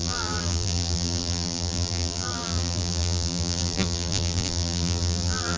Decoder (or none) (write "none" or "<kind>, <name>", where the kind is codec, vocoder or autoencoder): vocoder, BigVGAN v2